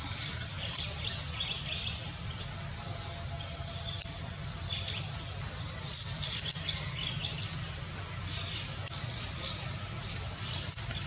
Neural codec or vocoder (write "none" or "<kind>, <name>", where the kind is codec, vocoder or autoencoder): none